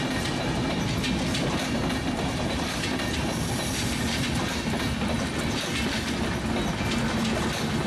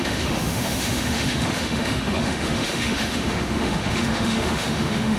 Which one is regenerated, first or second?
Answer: second